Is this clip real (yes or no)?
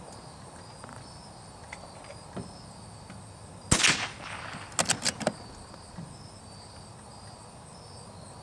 yes